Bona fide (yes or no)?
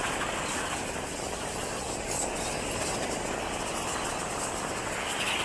yes